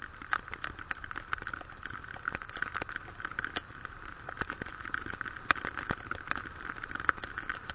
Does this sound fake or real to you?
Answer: fake